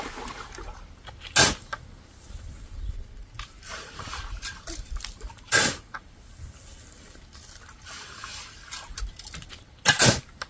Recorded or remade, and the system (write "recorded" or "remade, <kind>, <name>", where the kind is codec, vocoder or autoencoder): recorded